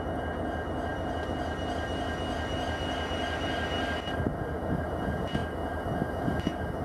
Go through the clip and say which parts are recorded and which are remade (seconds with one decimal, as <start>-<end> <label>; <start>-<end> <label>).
0.0-6.8 recorded